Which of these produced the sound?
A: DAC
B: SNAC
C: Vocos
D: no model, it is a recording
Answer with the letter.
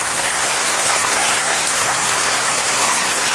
B